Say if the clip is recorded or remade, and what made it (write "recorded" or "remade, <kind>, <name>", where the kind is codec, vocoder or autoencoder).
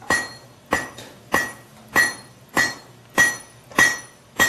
remade, vocoder, BigVGAN v2